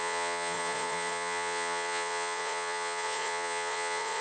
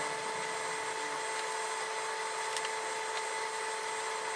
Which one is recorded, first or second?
second